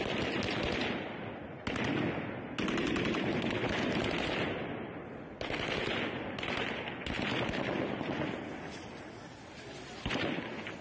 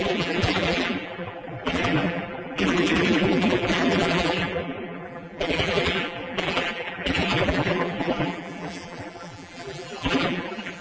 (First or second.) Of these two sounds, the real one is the first